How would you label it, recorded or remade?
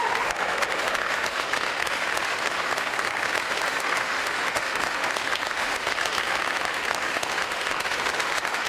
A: remade